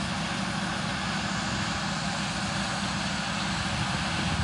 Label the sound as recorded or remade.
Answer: recorded